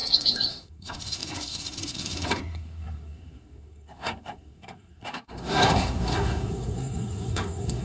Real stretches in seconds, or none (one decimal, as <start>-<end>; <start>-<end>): none